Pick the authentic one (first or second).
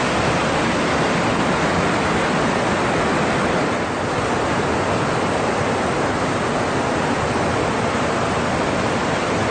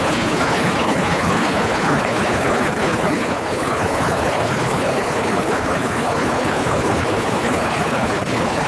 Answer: first